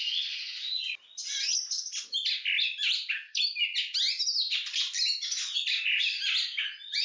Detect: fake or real real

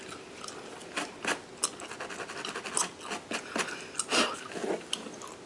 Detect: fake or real real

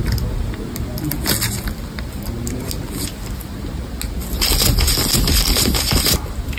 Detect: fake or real real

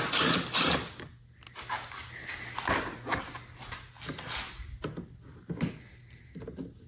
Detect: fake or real real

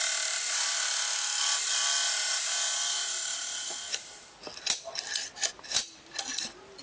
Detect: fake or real real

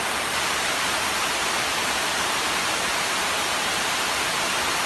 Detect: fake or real fake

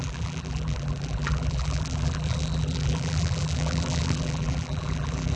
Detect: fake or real fake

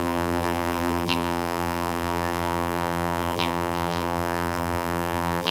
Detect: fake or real fake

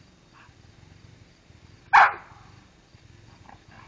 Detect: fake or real real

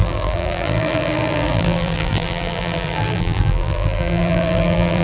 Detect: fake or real fake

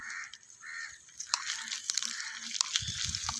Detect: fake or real fake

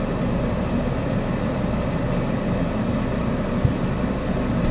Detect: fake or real real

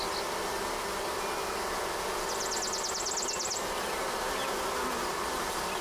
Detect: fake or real real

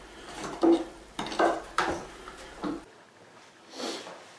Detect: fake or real real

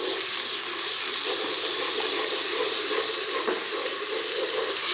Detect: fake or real real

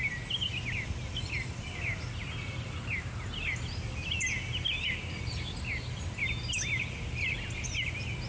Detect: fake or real real